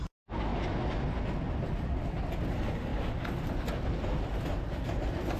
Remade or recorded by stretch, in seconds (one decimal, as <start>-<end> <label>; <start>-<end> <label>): 0.0-5.4 recorded